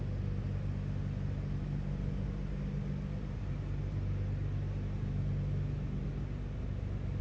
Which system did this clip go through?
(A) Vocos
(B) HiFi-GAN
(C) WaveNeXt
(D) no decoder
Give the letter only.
D